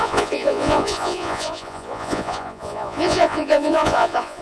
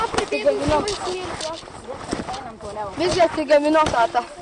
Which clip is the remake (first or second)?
first